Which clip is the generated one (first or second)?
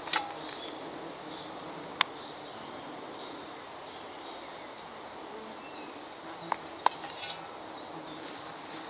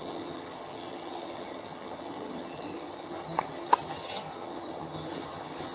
second